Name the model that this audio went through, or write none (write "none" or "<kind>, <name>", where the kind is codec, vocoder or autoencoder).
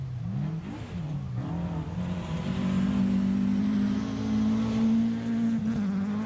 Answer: none